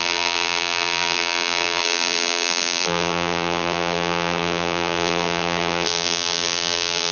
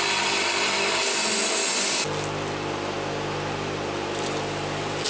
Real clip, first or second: second